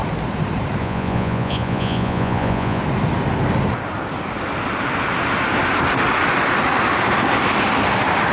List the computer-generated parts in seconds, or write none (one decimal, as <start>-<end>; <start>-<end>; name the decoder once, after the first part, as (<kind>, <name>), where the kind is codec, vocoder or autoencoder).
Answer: 0.8-2.8 (vocoder, Vocos)

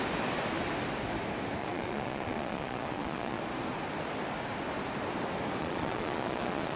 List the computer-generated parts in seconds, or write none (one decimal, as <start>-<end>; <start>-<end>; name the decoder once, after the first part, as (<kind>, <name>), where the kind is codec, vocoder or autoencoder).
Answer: 1.6-3.4 (vocoder, Vocos); 5.6-6.8

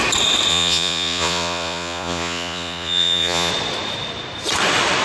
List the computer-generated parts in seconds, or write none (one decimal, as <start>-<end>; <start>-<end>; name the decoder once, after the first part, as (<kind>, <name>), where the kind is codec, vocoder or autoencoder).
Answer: 0.5-3.5 (vocoder, Vocos)

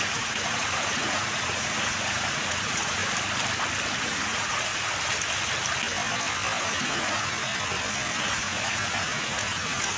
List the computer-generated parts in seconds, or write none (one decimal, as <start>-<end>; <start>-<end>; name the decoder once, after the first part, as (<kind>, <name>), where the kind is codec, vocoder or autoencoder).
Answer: 0.0-3.0 (vocoder, Vocos); 4.0-4.7; 6.6-7.5; 8.2-10.0